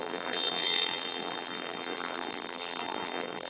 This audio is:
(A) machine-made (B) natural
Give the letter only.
A